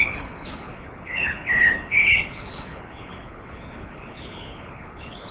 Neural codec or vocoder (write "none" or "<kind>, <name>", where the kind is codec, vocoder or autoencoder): codec, HILCodec